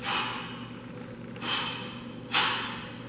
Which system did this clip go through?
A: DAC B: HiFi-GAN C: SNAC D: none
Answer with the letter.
D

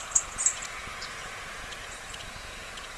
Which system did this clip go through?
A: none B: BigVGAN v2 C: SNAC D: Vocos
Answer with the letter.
D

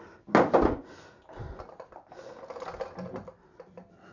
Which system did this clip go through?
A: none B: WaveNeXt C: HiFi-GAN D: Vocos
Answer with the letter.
A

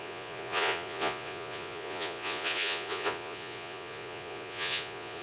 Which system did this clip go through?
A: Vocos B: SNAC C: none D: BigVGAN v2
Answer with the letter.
A